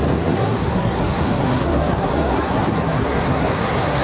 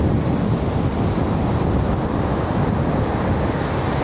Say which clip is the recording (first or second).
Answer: second